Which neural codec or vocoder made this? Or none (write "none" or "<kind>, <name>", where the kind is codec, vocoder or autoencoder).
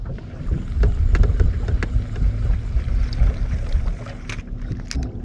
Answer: none